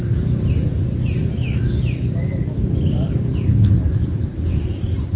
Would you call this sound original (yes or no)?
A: yes